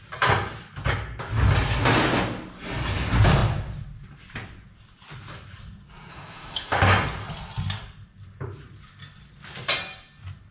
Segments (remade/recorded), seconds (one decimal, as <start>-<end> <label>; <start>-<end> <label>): 0.0-6.1 recorded; 6.1-6.8 remade; 6.8-10.5 recorded